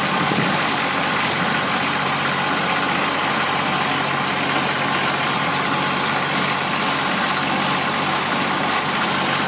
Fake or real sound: real